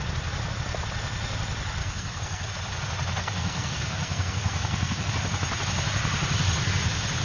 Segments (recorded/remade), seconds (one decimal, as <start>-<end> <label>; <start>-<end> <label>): 0.0-1.8 recorded; 1.8-2.5 remade; 2.5-3.2 recorded; 3.2-5.1 remade; 5.1-7.2 recorded